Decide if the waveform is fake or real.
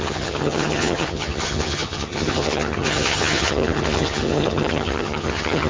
fake